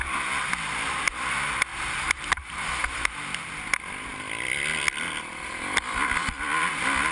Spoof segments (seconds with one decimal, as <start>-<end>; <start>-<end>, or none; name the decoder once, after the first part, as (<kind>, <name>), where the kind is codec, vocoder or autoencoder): 1.7-3.2 (vocoder, BigVGAN v2)